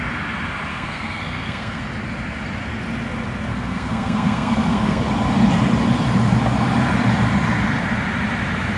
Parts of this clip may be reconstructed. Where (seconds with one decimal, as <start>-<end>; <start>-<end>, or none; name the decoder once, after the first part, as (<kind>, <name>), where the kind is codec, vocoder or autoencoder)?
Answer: 0.7-1.8 (codec, SNAC); 3.5-5.0